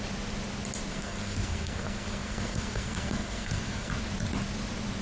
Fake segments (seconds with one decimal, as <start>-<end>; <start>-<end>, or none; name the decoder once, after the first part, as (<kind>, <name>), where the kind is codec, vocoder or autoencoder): 0.9-3.9 (codec, SNAC)